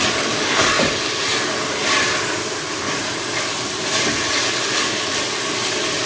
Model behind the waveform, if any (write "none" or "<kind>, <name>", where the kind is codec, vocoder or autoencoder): none